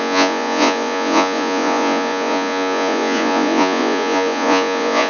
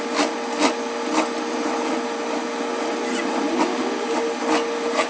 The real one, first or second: second